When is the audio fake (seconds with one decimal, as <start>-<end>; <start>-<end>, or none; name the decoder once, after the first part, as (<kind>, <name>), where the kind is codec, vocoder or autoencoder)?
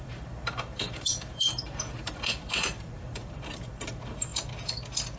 0.0-4.3 (vocoder, BigVGAN v2)